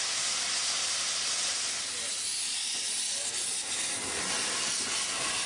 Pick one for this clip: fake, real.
real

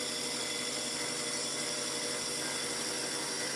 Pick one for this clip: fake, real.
real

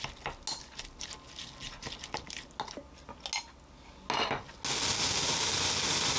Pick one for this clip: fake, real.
real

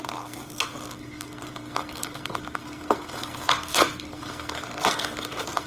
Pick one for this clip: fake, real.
fake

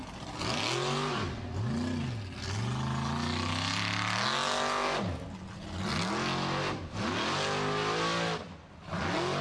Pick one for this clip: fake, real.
real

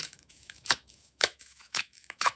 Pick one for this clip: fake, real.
fake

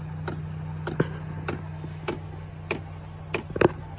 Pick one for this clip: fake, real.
real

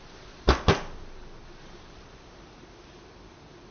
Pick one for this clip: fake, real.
real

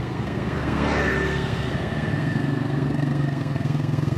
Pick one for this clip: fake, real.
fake